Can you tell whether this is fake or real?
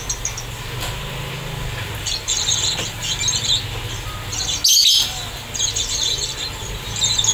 real